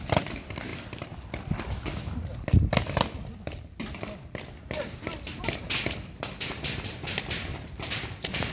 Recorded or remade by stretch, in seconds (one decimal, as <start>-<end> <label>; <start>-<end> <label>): 0.0-7.5 recorded; 7.5-8.5 remade

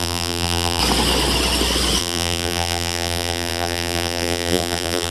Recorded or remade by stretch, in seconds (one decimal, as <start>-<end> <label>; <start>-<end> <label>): 0.0-0.8 remade; 0.8-2.0 recorded; 2.0-5.1 remade

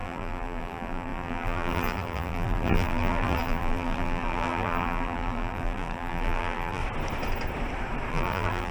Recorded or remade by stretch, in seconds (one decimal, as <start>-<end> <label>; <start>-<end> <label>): 0.0-6.8 remade; 6.8-8.1 recorded; 8.1-8.7 remade

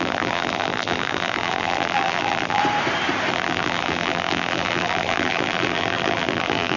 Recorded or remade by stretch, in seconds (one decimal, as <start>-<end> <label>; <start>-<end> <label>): 0.0-2.6 remade; 2.6-3.3 recorded; 3.3-6.8 remade

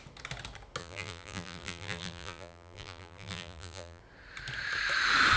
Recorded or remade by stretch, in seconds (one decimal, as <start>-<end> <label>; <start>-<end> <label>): 0.0-0.8 recorded; 0.8-4.0 remade; 4.0-5.4 recorded

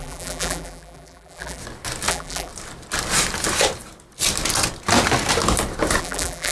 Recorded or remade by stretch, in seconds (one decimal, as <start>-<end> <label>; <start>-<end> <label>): 0.0-1.6 remade; 1.6-2.1 recorded; 2.1-2.5 remade; 2.5-6.0 recorded; 6.0-6.5 remade